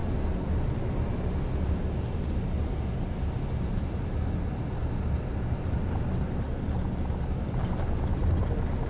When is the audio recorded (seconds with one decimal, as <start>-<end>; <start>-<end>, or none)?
0.0-8.9